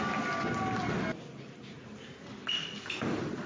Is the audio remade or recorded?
recorded